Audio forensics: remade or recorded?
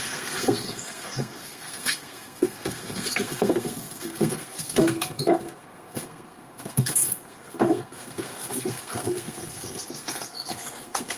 remade